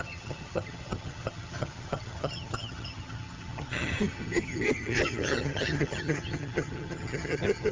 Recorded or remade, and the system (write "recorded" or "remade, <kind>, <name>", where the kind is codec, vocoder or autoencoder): remade, vocoder, HiFi-GAN